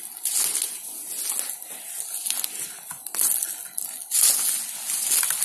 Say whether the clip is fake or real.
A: real